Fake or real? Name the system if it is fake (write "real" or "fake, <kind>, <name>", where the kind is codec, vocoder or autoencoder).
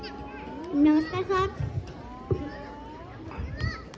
real